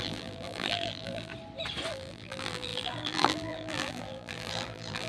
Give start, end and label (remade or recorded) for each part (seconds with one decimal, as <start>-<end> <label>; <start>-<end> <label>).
0.0-1.3 remade; 1.3-1.9 recorded; 1.9-5.1 remade